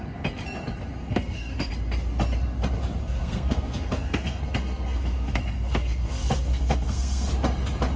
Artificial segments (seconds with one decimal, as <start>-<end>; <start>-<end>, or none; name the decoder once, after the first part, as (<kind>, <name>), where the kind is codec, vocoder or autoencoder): 1.0-1.7 (codec, SNAC); 3.0-7.3

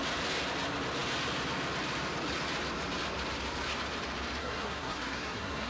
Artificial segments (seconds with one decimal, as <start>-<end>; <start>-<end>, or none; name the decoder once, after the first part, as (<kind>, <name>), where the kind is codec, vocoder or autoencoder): 4.4-5.7 (codec, SNAC)

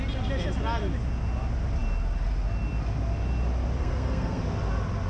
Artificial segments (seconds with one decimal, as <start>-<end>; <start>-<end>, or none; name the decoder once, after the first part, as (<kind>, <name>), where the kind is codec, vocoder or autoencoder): 3.8-4.4 (codec, SNAC)

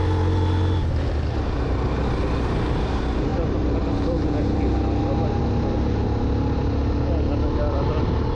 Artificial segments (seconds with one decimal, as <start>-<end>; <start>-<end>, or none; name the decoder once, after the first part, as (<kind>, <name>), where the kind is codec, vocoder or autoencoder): none

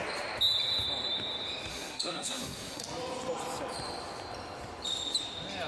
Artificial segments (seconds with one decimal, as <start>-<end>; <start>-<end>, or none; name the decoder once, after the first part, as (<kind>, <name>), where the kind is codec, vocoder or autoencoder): 1.7-2.8 (codec, SNAC)

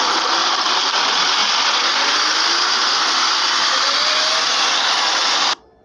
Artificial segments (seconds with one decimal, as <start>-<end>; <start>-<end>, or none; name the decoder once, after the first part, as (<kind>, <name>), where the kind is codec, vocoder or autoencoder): none